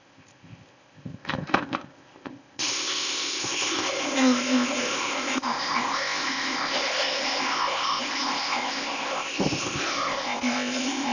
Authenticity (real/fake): fake